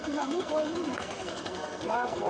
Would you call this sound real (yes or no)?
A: no